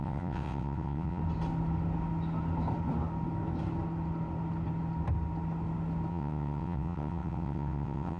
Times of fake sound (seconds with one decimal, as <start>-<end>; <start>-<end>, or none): 0.0-1.2; 6.1-8.2